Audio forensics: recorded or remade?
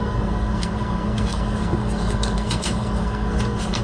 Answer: remade